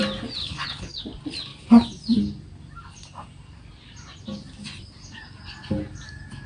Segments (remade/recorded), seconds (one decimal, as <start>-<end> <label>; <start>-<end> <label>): 0.0-0.4 recorded; 0.4-1.0 remade; 1.0-6.5 recorded